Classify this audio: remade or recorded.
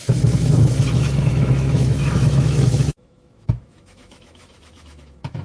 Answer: remade